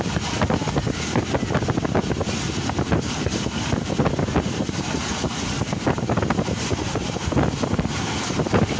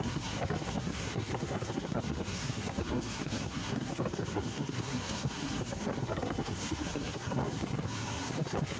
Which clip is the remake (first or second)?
second